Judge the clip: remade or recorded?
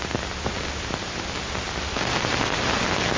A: recorded